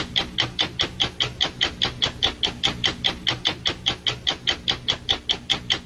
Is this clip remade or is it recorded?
recorded